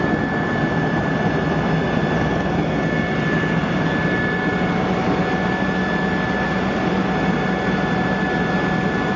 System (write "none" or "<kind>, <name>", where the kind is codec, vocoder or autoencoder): none